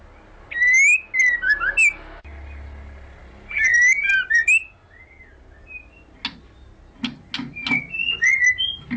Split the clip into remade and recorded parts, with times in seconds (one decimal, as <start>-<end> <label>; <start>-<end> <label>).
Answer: 0.0-9.0 recorded